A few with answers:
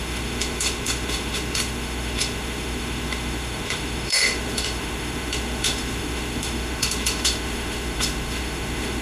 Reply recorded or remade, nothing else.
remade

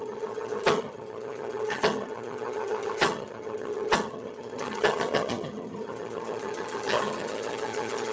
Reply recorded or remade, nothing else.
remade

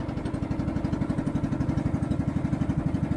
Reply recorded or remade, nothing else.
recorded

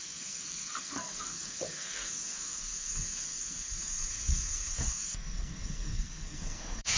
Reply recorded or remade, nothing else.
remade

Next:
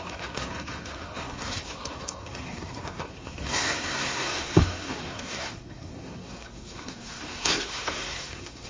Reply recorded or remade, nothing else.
remade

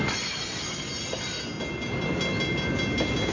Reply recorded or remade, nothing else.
recorded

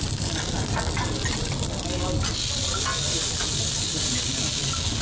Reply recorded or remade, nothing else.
recorded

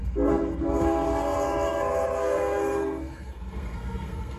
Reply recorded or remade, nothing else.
remade